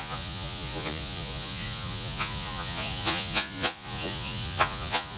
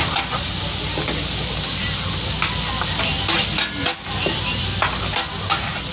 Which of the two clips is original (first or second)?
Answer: second